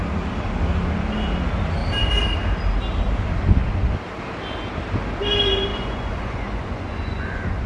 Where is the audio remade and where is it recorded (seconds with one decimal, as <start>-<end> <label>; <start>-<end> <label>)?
0.0-5.7 recorded; 5.7-7.7 remade